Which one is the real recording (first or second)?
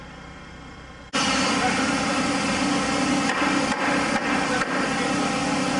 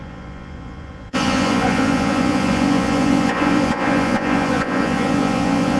first